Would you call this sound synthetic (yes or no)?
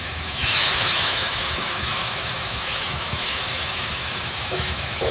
yes